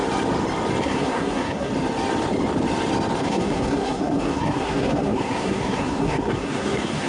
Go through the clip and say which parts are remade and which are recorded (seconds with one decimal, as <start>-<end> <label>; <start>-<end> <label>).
0.0-0.8 recorded; 0.8-1.7 remade; 1.7-3.2 recorded; 3.2-7.1 remade